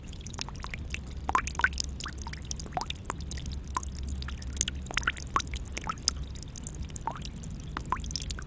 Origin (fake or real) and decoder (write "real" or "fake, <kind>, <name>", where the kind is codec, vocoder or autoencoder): real